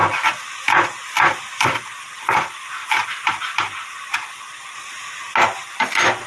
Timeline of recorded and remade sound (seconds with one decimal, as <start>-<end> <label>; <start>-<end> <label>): 0.0-6.3 recorded